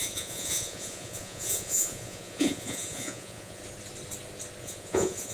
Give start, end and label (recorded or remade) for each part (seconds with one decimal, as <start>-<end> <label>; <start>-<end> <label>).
0.0-3.6 remade; 3.6-4.6 recorded; 4.6-5.3 remade